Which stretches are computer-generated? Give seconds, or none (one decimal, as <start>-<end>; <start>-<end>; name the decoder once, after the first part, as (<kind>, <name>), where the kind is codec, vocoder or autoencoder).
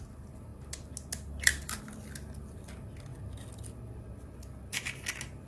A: none